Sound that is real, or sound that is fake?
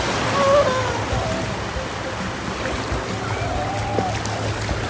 real